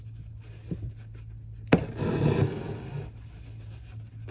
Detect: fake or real real